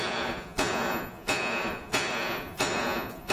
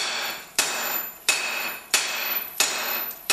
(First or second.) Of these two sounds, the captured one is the second